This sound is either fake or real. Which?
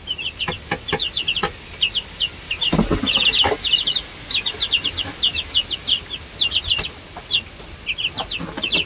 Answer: real